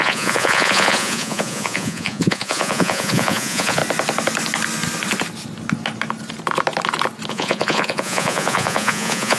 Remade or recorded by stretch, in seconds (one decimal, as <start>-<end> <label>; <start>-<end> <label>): 0.0-3.8 remade; 3.8-7.3 recorded; 7.3-9.4 remade